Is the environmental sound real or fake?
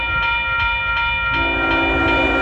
real